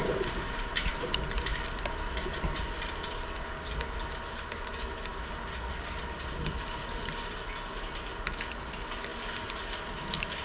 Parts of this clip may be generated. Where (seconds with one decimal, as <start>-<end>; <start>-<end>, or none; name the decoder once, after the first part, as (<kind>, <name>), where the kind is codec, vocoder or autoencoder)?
none